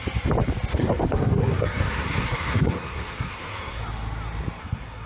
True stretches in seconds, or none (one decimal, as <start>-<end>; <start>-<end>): 0.0-0.7; 3.8-4.6